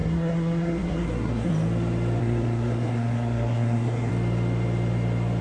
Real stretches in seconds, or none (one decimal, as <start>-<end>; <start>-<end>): 1.5-2.2; 4.1-5.4